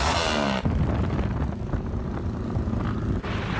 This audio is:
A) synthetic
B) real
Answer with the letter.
B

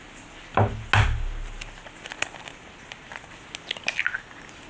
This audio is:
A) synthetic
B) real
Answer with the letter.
B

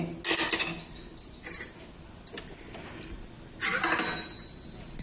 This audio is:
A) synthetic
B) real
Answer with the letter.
B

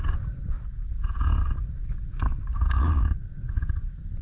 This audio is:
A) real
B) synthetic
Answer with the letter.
A